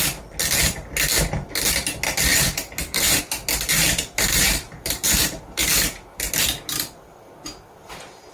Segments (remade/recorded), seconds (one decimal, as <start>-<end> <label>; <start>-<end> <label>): 0.0-2.3 recorded; 2.3-3.2 remade; 3.2-3.8 recorded; 3.8-6.3 remade; 6.3-8.3 recorded